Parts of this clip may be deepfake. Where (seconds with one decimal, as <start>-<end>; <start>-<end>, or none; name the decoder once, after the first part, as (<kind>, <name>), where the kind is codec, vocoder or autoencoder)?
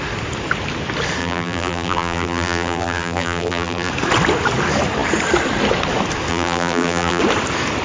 1.2-3.9 (vocoder, BigVGAN v2); 6.3-7.2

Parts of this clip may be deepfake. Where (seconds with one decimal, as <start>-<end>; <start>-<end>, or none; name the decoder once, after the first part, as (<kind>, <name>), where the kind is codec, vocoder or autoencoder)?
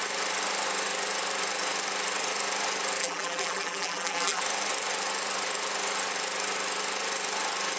3.0-4.4 (vocoder, BigVGAN v2)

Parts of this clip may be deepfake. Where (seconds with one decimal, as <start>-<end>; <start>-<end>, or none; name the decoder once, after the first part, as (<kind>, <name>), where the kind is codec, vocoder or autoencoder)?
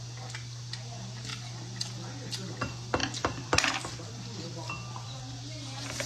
3.0-5.2 (vocoder, BigVGAN v2)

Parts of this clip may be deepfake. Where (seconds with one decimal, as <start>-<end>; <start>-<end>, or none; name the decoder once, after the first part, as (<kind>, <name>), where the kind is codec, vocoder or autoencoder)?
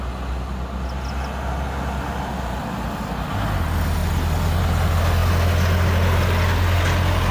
none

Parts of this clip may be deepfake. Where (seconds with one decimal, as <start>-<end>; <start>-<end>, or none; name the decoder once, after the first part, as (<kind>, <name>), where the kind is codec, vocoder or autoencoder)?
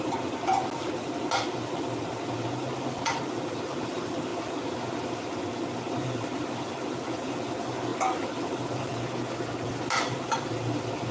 none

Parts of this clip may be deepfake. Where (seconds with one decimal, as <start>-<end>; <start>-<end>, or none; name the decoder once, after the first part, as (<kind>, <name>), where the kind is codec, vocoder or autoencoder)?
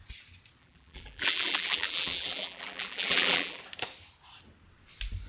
0.6-3.6 (vocoder, BigVGAN v2)